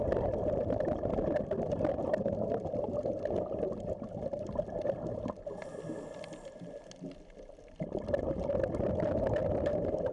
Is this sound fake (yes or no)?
no